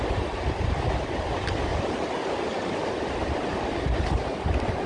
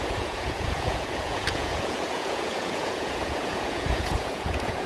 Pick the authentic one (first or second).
first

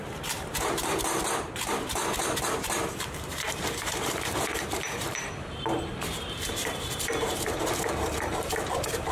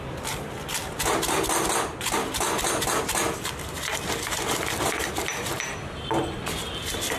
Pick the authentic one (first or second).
second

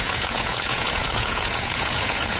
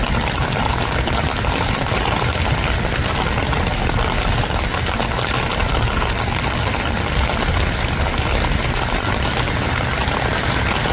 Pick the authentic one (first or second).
second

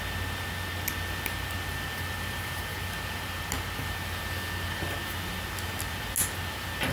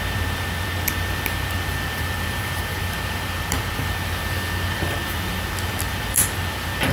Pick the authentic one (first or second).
first